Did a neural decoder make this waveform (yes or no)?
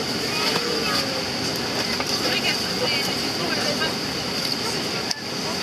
no